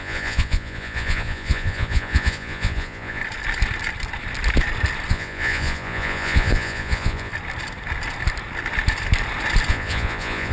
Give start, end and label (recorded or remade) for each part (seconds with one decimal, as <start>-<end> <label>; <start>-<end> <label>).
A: 0.0-3.2 remade; 3.2-5.1 recorded; 5.1-7.3 remade; 7.3-9.7 recorded; 9.7-10.5 remade